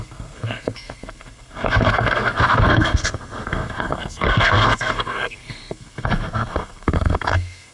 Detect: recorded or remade remade